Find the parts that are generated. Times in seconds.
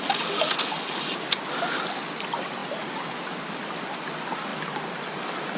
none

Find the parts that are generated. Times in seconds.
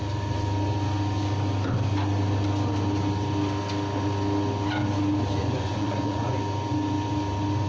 5.4-6.4 (vocoder, Vocos)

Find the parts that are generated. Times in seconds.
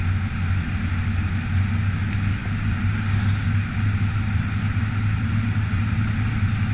none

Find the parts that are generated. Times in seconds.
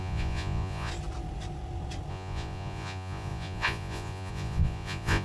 0.0-0.9 (vocoder, Vocos); 2.1-5.2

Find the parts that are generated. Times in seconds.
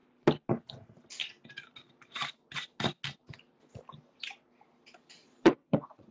5.2-6.1 (vocoder, Vocos)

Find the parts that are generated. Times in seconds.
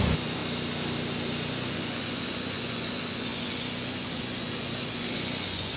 0.0-0.4 (vocoder, Vocos); 1.5-5.8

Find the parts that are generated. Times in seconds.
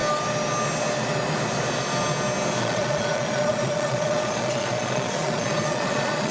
2.6-6.3 (vocoder, Vocos)